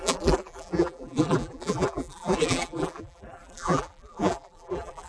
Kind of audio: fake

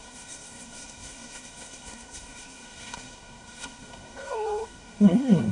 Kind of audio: fake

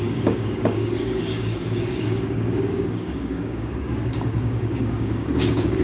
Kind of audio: fake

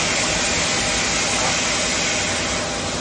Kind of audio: real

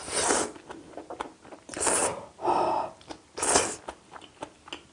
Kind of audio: real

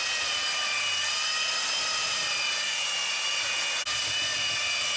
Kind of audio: real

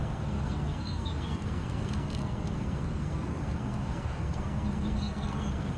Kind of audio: fake